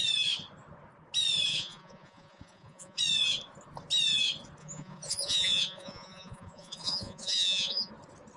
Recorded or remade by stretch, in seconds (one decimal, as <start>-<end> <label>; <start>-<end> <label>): 0.0-1.5 recorded; 1.5-3.0 remade; 3.0-4.6 recorded; 4.6-7.9 remade; 7.9-8.4 recorded